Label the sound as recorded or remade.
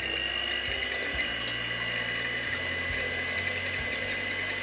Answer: recorded